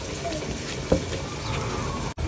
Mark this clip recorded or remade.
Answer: recorded